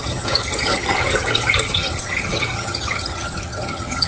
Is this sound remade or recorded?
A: remade